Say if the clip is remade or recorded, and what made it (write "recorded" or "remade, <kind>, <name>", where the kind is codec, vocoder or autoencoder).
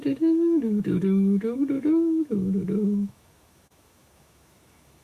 remade, autoencoder, DAC-VAE